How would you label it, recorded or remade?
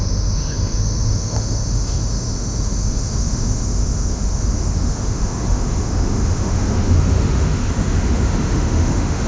remade